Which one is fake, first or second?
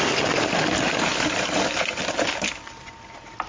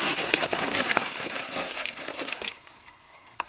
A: second